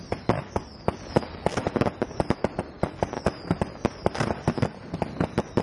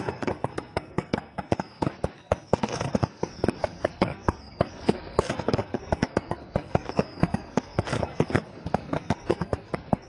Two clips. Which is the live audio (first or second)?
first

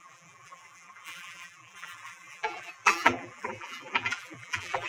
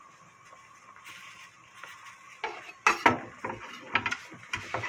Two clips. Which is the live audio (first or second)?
second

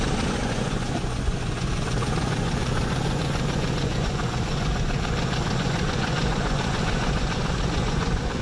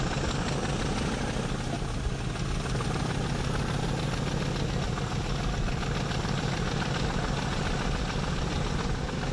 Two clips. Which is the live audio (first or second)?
second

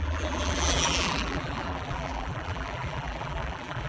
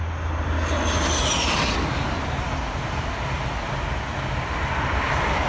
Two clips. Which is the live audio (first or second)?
second